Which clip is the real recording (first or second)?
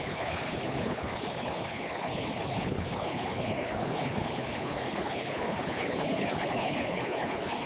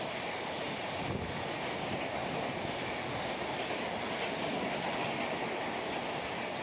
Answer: second